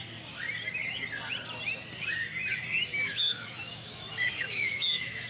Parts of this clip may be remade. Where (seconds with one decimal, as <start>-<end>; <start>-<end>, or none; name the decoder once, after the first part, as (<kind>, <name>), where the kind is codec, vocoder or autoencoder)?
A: 2.9-5.3 (autoencoder, DAC-VAE)